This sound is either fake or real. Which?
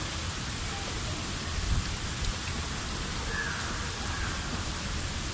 real